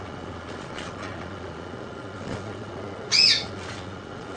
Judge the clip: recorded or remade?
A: remade